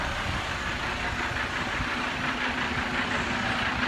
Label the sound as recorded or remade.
recorded